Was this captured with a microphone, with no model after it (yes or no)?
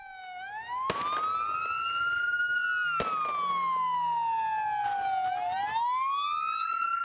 yes